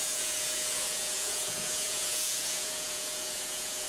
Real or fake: fake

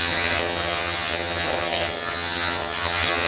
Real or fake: fake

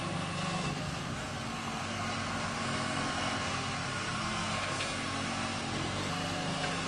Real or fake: fake